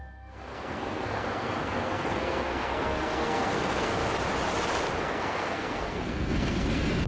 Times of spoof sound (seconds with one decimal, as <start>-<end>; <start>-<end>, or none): 0.0-4.0; 5.0-7.1